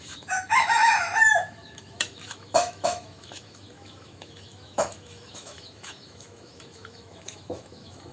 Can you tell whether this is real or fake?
fake